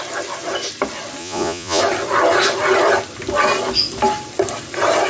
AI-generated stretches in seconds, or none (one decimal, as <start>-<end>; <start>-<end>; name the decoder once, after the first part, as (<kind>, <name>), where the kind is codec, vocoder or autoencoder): 1.2-1.8 (vocoder, Vocos)